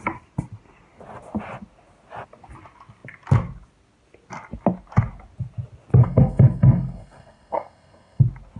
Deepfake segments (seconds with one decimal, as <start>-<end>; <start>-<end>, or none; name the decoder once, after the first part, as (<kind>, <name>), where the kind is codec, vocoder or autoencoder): 6.0-8.2 (codec, SNAC)